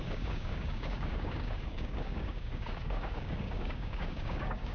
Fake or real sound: fake